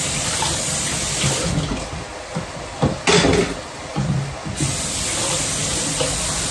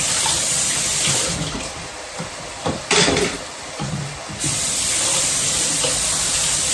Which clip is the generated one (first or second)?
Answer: second